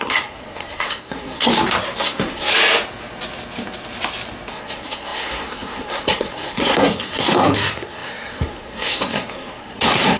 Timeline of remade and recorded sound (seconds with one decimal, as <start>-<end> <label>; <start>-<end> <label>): 0.0-1.5 remade; 1.5-2.0 recorded; 2.0-2.5 remade; 2.5-4.5 recorded; 4.5-10.2 remade